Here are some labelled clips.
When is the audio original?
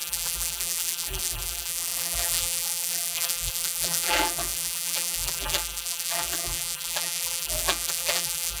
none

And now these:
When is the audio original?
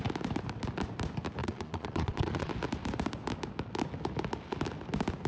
0.0-1.4; 2.5-5.3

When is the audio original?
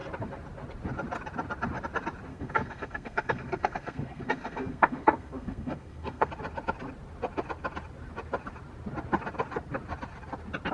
0.0-2.3; 6.3-10.7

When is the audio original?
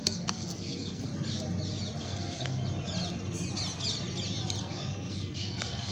1.1-2.0; 2.6-4.6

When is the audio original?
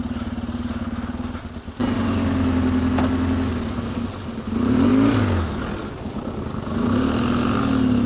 0.0-8.1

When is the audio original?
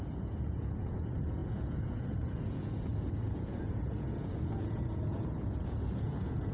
none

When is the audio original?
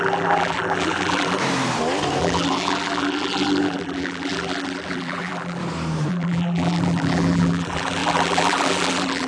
1.4-2.2; 5.6-6.1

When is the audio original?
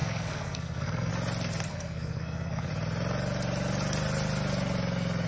1.1-1.7; 2.7-5.3